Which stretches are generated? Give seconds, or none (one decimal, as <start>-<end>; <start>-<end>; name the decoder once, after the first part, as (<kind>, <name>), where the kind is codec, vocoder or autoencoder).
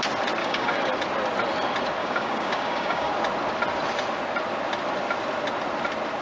0.4-0.9 (codec, DAC); 2.0-3.1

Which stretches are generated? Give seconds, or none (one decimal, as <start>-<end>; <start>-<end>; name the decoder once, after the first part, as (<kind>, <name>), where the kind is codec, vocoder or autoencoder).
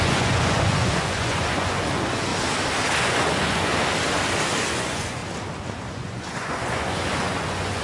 0.0-2.3 (vocoder, Vocos); 3.0-3.7; 4.6-5.2; 5.9-7.8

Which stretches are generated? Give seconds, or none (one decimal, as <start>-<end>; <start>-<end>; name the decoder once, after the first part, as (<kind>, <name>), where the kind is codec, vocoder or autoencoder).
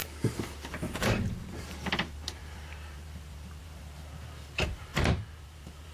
0.0-4.9 (vocoder, BigVGAN v2); 5.4-5.9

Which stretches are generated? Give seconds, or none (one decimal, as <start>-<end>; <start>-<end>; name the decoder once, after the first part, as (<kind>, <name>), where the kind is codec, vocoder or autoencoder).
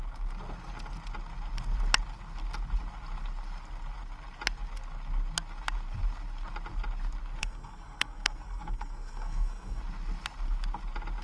7.4-9.8 (codec, SNAC)